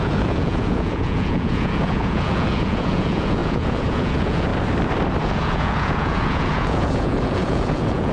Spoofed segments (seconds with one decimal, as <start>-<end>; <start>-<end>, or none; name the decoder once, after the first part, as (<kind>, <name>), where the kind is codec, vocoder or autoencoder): 0.0-4.5 (vocoder, Vocos); 5.2-8.1